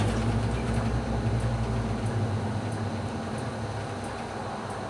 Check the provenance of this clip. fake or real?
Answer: real